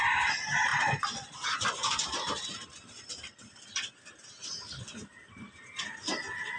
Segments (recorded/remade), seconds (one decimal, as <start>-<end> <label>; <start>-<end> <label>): 0.0-0.7 recorded; 0.7-4.0 remade; 4.0-6.6 recorded